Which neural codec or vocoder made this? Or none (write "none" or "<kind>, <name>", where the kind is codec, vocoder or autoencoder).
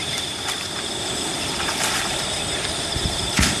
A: vocoder, BigVGAN v2